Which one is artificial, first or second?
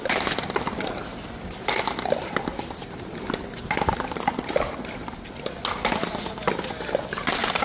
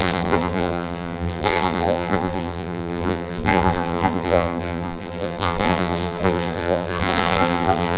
second